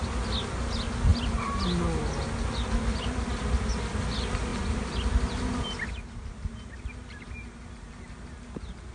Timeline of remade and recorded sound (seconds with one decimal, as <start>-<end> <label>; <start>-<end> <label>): 0.0-8.9 recorded